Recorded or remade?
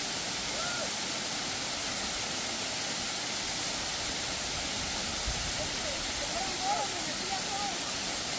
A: recorded